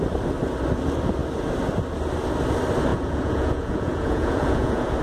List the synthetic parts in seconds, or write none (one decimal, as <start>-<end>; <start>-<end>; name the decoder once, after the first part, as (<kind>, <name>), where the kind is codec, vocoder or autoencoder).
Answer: 2.9-5.0 (vocoder, Vocos)